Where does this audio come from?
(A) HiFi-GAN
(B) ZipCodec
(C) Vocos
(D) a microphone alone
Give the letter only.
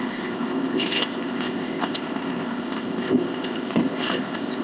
B